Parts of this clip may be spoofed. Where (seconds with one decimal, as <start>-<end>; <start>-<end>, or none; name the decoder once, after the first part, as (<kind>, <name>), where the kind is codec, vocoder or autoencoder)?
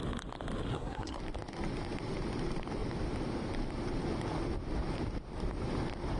0.7-1.2 (codec, SNAC)